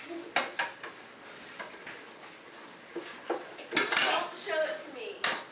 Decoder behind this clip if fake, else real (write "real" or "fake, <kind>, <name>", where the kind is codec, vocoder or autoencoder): real